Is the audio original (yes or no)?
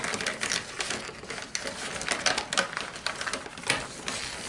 yes